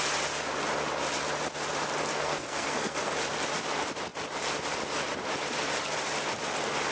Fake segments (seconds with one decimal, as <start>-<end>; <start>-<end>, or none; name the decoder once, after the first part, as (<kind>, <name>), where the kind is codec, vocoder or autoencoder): 2.1-3.1 (codec, SNAC)

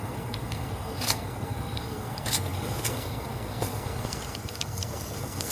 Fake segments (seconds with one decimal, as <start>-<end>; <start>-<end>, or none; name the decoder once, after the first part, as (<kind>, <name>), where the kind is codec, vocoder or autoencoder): 0.0-5.5 (codec, SNAC)

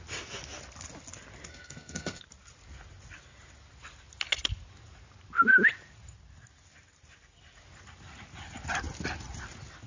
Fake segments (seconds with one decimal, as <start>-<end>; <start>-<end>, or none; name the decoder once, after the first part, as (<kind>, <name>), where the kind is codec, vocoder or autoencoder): 1.5-2.2 (codec, SNAC)

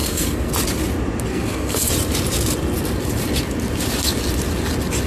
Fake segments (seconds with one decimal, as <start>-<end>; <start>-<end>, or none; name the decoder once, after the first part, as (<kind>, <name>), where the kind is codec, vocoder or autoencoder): 0.0-0.5 (codec, SNAC); 1.3-1.9

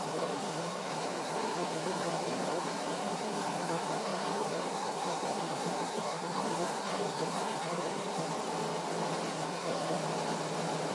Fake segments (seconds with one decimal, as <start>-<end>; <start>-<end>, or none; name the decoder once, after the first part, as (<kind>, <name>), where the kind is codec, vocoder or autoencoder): 0.0-8.3 (codec, SNAC); 9.3-10.0

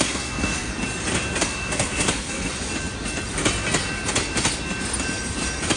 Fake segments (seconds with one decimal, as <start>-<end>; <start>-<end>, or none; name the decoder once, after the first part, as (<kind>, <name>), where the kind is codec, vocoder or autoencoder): 0.0-0.7 (codec, SNAC); 1.4-2.5